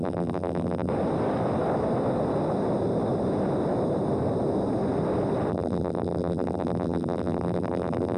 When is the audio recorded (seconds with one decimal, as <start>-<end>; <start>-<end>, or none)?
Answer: 0.9-5.5